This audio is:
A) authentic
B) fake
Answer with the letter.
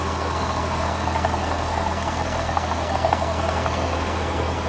B